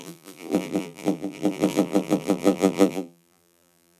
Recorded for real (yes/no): no